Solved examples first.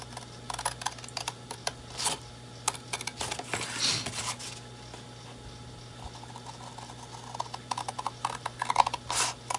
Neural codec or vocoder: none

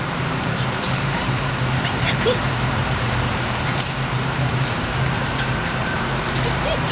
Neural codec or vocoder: vocoder, BigVGAN v2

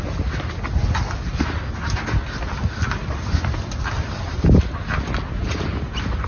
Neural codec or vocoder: none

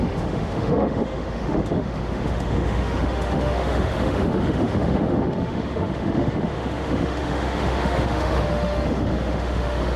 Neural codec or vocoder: autoencoder, DAC-VAE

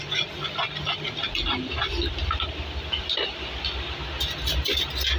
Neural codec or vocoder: none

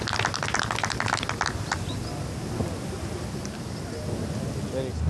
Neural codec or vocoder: none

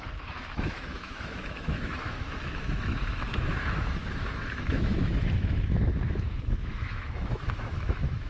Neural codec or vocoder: autoencoder, DAC-VAE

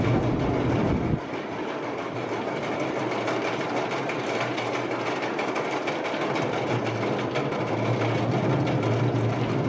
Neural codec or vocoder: none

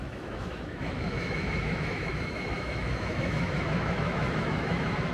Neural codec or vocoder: autoencoder, DAC-VAE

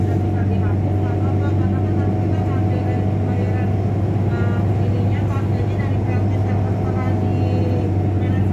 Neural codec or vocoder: none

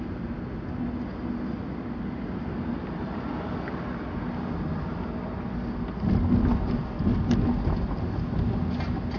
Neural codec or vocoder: none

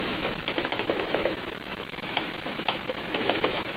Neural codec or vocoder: autoencoder, DAC-VAE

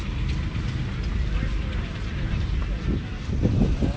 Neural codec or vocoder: vocoder, BigVGAN v2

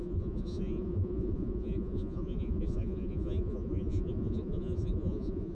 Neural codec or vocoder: vocoder, Vocos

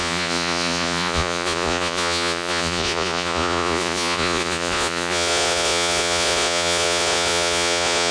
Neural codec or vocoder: vocoder, Vocos